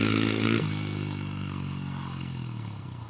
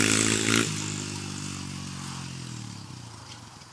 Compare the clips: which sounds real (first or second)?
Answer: second